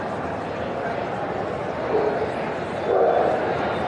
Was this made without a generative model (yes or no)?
yes